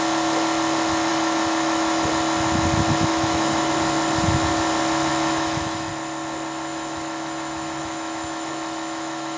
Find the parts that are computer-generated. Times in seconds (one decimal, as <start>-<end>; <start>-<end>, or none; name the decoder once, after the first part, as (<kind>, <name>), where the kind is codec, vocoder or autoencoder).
1.1-2.1 (autoencoder, DAC-VAE); 3.1-3.7; 5.1-5.9; 6.7-9.4